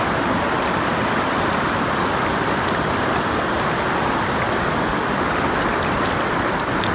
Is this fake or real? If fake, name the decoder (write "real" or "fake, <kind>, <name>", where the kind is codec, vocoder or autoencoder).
real